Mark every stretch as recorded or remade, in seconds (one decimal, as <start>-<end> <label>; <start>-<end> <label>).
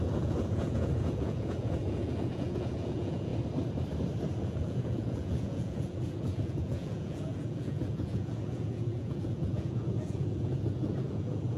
0.0-3.3 remade; 3.3-4.4 recorded; 4.4-11.6 remade